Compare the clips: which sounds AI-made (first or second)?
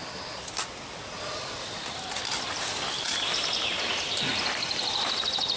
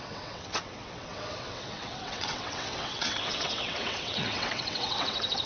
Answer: second